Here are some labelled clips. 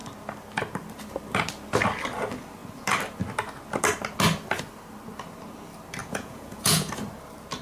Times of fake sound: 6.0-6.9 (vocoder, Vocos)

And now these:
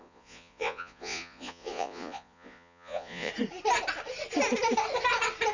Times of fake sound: 0.0-3.3 (vocoder, Vocos)

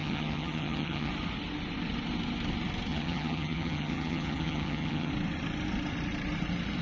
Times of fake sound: 0.0-1.1 (vocoder, HiFi-GAN); 2.9-5.1

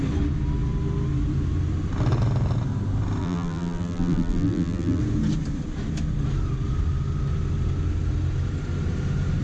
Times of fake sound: 3.2-5.0 (vocoder, BigVGAN v2)

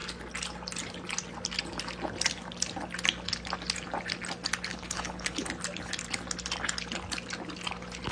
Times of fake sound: 4.7-5.5 (codec, HILCodec)

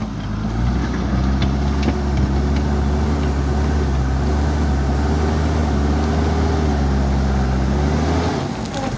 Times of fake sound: none

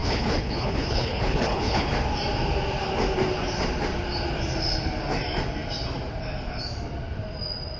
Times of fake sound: 0.0-1.9 (codec, HILCodec)